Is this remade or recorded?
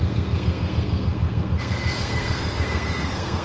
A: remade